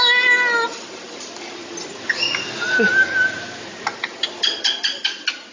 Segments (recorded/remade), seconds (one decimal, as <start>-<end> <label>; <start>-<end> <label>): 0.0-5.5 recorded